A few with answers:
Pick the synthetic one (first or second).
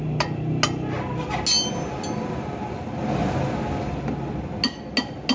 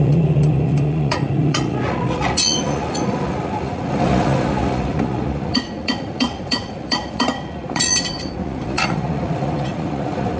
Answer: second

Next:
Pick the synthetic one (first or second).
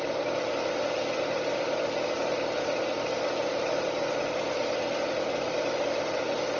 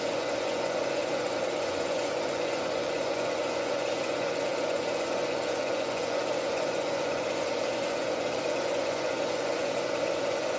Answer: second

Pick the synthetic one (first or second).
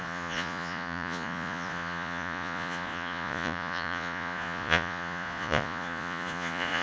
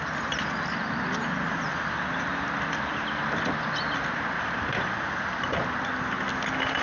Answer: first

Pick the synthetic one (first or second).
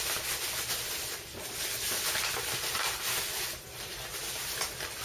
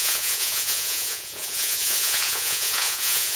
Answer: second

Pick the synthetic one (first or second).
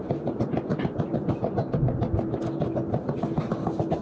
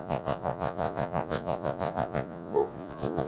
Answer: second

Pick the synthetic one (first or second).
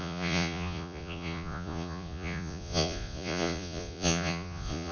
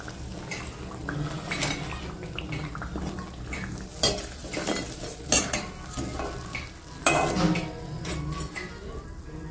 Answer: first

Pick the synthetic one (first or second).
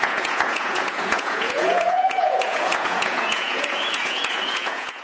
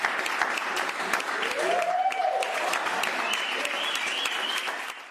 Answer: first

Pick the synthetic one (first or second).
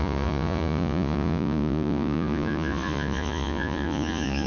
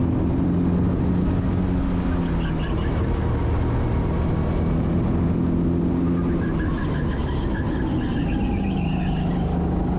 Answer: first